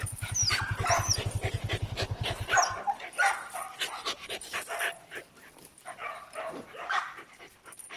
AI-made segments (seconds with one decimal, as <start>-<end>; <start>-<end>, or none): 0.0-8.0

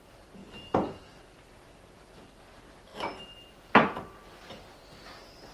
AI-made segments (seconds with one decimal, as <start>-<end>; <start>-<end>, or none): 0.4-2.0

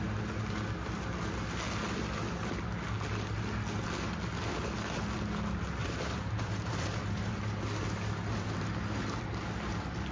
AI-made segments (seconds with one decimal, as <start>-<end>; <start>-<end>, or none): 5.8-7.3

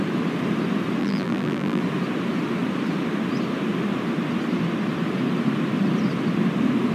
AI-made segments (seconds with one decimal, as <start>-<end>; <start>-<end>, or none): 1.0-1.8

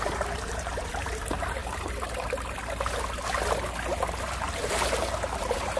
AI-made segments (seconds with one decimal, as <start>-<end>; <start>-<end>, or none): 0.0-1.6; 4.2-5.8

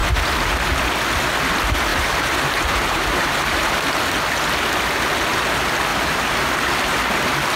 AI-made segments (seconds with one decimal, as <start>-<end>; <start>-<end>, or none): 1.9-3.8; 5.9-6.5

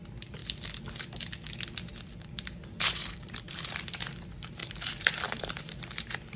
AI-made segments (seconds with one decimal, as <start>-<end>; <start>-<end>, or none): 0.0-0.4; 2.0-6.4